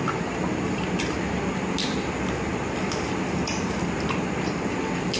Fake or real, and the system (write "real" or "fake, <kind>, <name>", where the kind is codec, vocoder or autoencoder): real